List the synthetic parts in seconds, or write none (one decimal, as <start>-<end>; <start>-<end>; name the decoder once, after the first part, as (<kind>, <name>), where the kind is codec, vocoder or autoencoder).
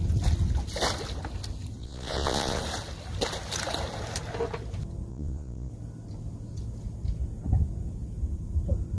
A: 1.8-2.6 (vocoder, Vocos); 5.1-5.7